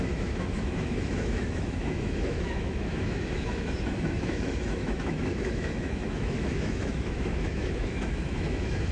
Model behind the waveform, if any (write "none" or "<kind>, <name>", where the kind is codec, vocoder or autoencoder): autoencoder, DAC-VAE